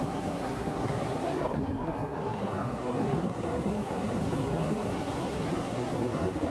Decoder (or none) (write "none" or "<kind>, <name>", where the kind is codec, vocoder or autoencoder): codec, SNAC